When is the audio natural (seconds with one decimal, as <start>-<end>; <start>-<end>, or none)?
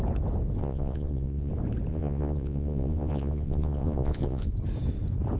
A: 0.0-0.6; 1.5-1.9; 4.5-5.4